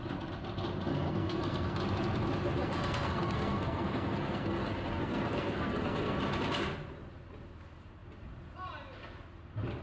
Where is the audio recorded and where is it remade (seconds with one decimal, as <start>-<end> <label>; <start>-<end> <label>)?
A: 0.0-0.9 recorded; 0.9-1.8 remade; 1.8-2.6 recorded; 2.6-6.2 remade; 6.2-9.8 recorded